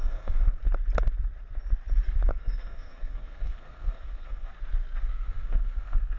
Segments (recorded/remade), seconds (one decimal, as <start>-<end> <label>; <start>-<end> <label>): 0.0-0.6 remade; 0.6-2.3 recorded; 2.3-4.5 remade; 4.5-5.0 recorded; 5.0-6.2 remade